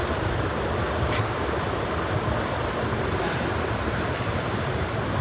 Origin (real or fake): real